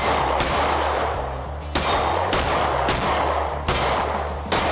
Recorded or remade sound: recorded